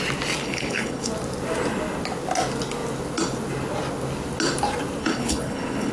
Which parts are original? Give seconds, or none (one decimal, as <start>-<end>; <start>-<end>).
0.0-0.4; 1.1-5.0